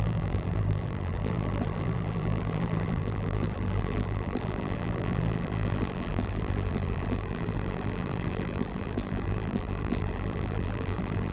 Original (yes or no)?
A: no